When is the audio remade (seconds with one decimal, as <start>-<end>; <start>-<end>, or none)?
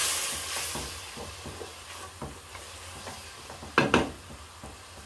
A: none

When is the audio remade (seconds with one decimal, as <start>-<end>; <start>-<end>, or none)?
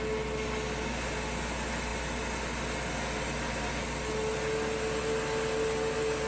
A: none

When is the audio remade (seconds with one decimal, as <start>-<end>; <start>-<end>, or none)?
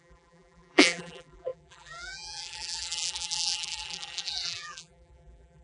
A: 0.0-5.6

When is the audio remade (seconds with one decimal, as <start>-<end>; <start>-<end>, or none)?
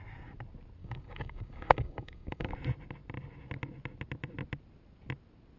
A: 0.8-2.5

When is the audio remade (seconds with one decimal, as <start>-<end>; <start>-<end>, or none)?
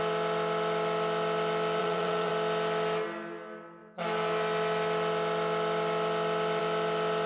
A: 1.8-2.3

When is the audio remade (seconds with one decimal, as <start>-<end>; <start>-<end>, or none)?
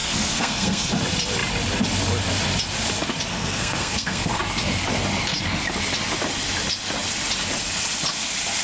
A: 0.0-0.9; 3.3-4.4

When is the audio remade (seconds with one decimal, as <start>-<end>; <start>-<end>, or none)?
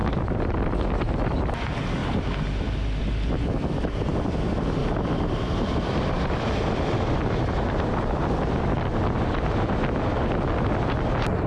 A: 4.8-9.0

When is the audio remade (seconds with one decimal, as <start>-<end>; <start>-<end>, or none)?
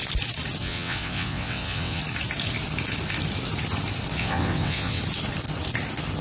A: 0.6-2.0; 4.2-5.0